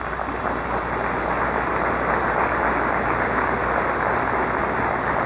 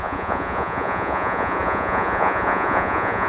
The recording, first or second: first